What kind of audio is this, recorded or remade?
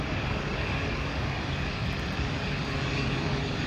remade